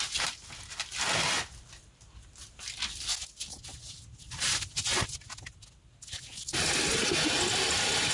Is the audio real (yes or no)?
yes